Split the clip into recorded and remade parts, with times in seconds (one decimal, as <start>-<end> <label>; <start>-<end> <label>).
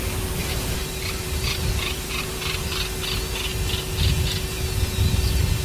0.0-0.4 recorded; 0.4-2.7 remade; 2.7-5.6 recorded